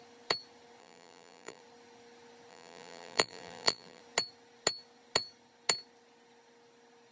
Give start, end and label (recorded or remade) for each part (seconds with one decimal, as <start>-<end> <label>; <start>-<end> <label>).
0.0-0.8 recorded; 0.8-1.6 remade; 1.6-2.5 recorded; 2.5-4.0 remade; 4.0-7.1 recorded